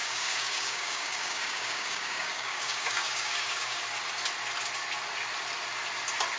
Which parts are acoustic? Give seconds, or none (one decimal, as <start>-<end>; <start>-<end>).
3.8-6.4